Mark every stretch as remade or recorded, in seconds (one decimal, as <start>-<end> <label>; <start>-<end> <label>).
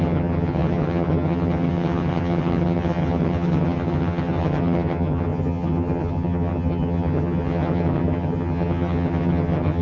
0.0-9.8 remade